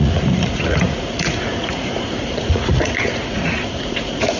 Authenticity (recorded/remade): remade